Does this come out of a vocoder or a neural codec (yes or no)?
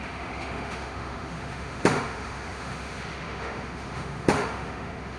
yes